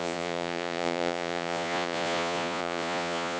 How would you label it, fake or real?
fake